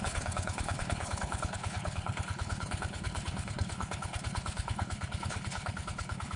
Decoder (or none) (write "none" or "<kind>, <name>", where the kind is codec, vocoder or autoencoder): codec, HILCodec